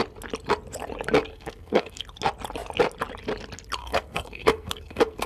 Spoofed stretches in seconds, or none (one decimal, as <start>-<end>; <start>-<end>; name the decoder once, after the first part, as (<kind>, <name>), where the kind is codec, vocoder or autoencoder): 1.3-2.0 (codec, SNAC); 3.8-5.3